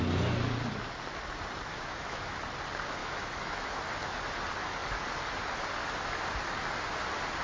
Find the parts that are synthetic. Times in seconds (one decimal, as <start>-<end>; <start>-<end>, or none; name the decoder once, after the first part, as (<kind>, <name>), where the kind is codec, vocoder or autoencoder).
1.7-2.4 (autoencoder, DAC-VAE); 3.0-3.8